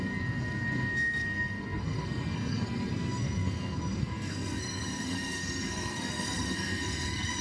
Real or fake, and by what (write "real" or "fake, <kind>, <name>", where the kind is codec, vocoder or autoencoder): fake, codec, SNAC